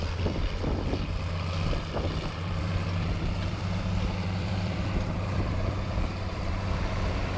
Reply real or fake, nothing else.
fake